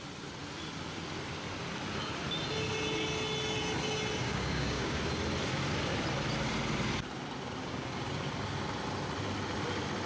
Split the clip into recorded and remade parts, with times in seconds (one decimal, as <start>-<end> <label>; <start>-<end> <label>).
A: 0.0-4.2 recorded; 4.2-5.0 remade; 5.0-7.6 recorded; 7.6-8.1 remade; 8.1-10.1 recorded